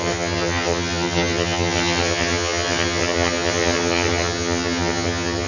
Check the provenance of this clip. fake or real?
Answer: fake